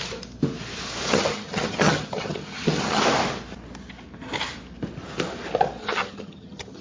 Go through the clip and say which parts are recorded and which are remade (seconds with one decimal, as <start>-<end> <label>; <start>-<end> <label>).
0.0-1.1 recorded; 1.1-3.0 remade; 3.0-5.8 recorded; 5.8-6.8 remade